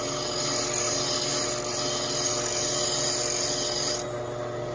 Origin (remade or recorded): recorded